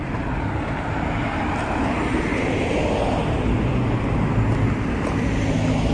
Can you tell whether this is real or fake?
real